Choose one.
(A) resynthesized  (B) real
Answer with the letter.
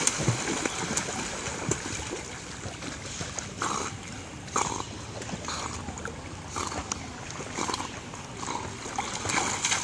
B